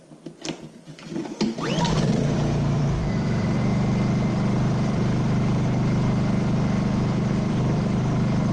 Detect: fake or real fake